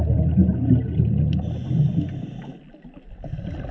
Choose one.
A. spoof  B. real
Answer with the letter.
B